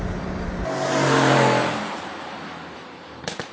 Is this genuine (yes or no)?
no